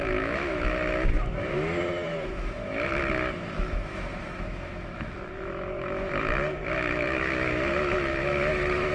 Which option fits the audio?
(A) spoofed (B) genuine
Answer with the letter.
A